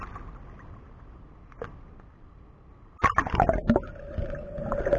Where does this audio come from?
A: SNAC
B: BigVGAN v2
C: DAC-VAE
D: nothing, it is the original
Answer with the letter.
D